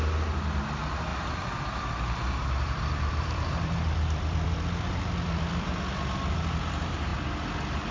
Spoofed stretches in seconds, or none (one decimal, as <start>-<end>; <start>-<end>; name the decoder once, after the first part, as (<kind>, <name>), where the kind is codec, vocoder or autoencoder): 1.1-5.7 (vocoder, BigVGAN v2)